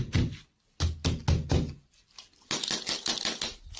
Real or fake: real